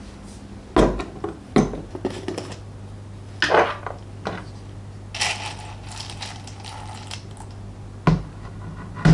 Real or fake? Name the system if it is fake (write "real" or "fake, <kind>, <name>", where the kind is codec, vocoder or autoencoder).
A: real